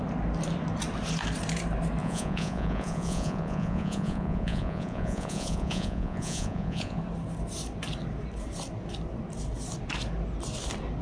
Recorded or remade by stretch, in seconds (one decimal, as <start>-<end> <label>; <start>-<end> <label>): 0.0-2.0 recorded; 2.0-7.0 remade; 7.0-11.0 recorded